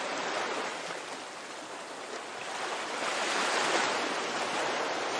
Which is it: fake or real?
real